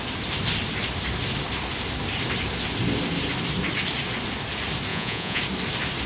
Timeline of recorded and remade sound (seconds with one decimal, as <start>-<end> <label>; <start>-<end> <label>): 0.0-4.9 recorded; 4.9-5.4 remade; 5.4-6.1 recorded